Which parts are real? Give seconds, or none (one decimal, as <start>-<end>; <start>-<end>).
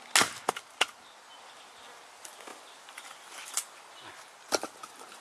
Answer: 0.0-2.5; 4.5-5.2